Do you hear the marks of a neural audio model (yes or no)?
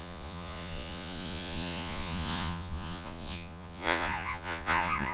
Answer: yes